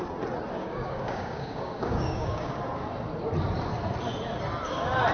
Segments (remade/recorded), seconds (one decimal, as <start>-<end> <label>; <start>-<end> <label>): 0.0-0.6 recorded; 0.6-2.6 remade; 2.6-5.1 recorded